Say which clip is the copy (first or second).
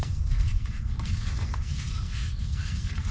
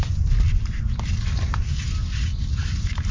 first